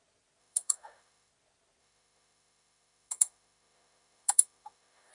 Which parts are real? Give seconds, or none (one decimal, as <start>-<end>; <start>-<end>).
0.0-0.4; 1.3-1.8